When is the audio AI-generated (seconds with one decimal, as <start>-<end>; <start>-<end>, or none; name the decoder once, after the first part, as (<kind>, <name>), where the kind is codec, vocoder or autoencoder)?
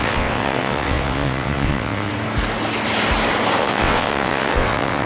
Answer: 0.0-2.1 (vocoder, WaveNeXt); 3.6-5.1